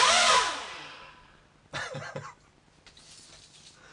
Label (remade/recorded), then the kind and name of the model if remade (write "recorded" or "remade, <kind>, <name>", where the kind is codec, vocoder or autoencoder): recorded